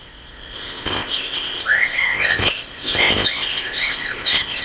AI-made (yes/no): yes